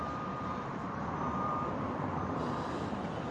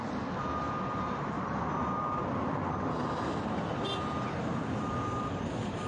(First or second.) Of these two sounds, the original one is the second